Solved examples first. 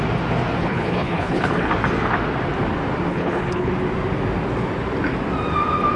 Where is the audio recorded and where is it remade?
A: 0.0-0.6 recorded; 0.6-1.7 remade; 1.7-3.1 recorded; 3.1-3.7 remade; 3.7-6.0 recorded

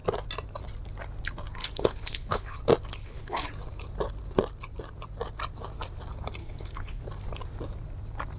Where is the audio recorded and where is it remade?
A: 0.0-1.6 recorded; 1.6-2.6 remade; 2.6-3.0 recorded; 3.0-3.5 remade; 3.5-6.4 recorded; 6.4-7.0 remade; 7.0-8.4 recorded

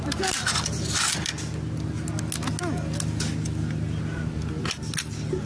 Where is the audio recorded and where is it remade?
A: 0.0-5.5 recorded

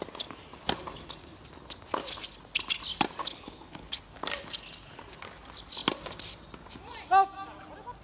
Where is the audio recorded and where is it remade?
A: 0.0-3.2 recorded; 3.2-4.0 remade; 4.0-8.0 recorded

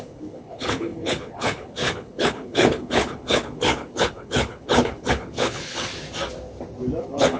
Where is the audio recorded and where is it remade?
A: 0.0-5.9 remade; 5.9-7.0 recorded; 7.0-7.4 remade